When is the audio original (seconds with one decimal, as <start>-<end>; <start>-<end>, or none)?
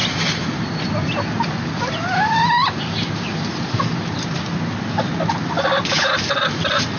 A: 0.0-7.0